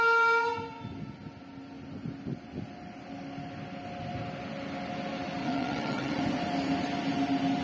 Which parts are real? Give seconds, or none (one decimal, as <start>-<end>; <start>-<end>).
0.0-5.4; 6.2-7.6